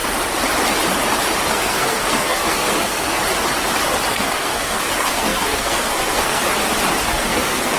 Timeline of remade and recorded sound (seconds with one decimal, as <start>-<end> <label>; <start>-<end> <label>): 0.0-1.5 recorded; 1.5-3.2 remade; 3.2-4.1 recorded; 4.1-6.4 remade; 6.4-7.1 recorded; 7.1-7.8 remade